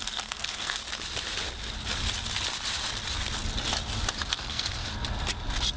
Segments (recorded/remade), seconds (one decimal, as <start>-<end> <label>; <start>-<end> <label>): 0.0-0.8 remade; 0.8-4.3 recorded; 4.3-4.8 remade; 4.8-5.8 recorded